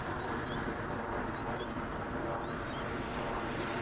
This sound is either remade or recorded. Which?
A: recorded